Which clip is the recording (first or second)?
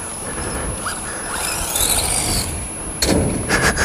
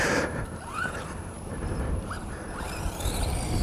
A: first